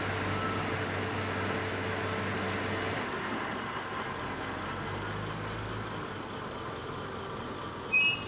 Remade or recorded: recorded